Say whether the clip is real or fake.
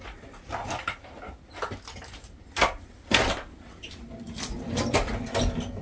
real